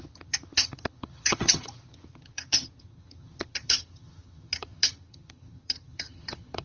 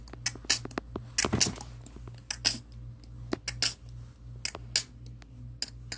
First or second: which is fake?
first